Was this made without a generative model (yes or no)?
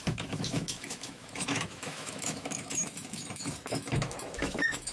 no